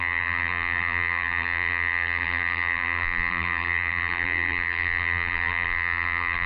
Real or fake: fake